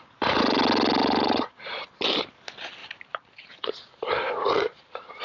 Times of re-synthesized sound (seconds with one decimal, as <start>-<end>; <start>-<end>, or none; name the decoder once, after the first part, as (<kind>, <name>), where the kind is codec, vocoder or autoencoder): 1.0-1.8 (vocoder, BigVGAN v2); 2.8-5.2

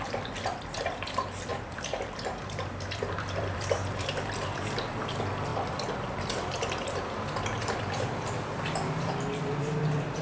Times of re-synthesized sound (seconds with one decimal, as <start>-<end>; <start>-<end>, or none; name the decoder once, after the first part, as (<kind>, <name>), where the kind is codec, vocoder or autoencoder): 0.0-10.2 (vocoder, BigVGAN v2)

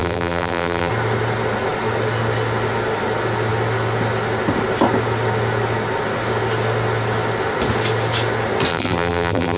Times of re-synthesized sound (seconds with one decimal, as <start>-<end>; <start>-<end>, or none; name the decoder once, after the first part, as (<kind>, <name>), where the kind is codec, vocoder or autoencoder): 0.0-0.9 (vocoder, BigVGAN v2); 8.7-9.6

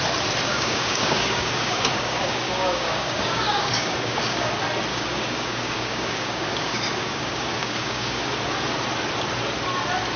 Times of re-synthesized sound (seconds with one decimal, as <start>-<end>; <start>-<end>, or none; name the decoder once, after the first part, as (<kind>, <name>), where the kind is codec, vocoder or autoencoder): 0.5-4.5 (codec, DAC); 4.9-8.2

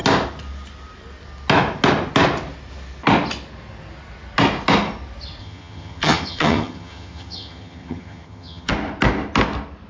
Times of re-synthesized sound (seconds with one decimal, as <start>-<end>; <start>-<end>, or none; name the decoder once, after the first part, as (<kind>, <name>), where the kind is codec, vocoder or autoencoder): 5.4-8.7 (vocoder, HiFi-GAN)